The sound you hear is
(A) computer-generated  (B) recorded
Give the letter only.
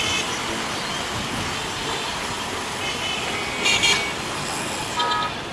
B